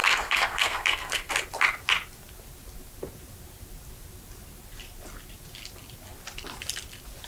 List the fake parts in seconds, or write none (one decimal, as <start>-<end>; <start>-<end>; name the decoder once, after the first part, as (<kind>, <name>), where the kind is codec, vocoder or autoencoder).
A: 0.0-1.3 (codec, SNAC)

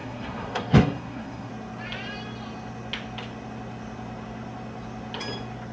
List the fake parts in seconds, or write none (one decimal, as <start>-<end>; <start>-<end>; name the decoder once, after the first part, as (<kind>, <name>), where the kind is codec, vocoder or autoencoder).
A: 0.0-1.5 (codec, SNAC)